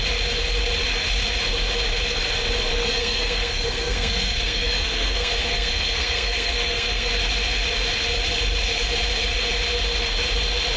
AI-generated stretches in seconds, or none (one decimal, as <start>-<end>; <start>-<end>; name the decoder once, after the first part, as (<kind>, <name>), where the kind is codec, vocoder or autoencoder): 2.7-7.1 (codec, SNAC)